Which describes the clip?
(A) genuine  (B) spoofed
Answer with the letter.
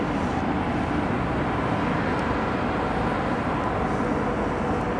A